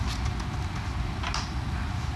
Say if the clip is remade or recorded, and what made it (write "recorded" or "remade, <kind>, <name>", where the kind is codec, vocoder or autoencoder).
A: recorded